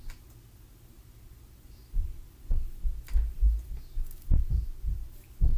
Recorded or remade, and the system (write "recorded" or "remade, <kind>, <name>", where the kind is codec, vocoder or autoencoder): recorded